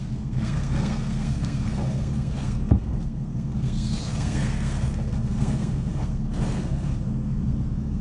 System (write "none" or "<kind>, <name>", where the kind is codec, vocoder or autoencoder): codec, SNAC